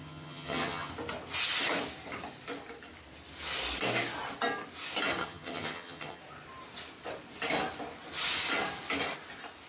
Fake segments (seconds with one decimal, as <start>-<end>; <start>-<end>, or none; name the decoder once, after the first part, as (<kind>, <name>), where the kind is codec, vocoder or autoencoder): 0.0-0.9 (vocoder, HiFi-GAN); 5.2-6.2